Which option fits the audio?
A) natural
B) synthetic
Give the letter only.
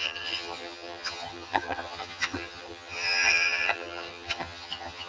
B